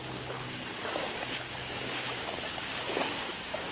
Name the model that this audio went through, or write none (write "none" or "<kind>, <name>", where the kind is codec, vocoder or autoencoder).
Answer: codec, DAC